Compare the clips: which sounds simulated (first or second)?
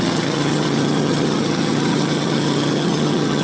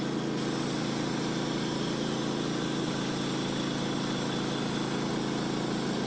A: first